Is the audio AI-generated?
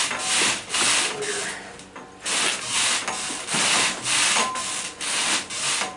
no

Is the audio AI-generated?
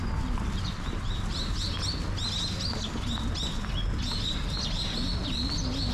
no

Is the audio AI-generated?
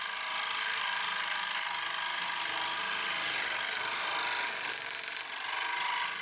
no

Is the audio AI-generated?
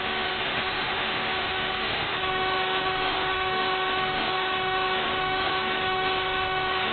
yes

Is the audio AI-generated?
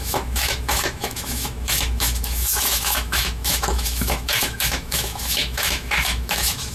yes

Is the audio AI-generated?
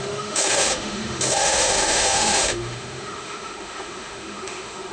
yes